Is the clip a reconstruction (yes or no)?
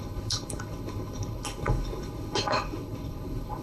yes